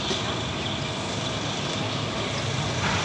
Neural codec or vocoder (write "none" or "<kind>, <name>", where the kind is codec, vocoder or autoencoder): none